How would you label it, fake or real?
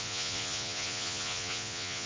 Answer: fake